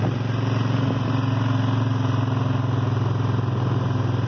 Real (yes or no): yes